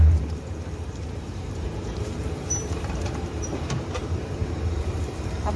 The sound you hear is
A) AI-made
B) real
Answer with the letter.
A